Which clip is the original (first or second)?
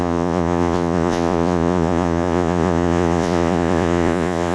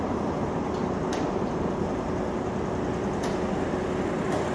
second